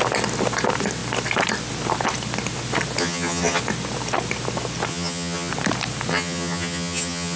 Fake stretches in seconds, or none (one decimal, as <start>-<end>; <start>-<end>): 3.0-3.6; 4.9-5.5; 6.1-7.4